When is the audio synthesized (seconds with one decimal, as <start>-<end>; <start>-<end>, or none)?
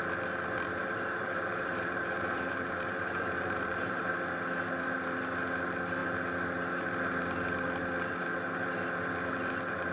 0.8-4.0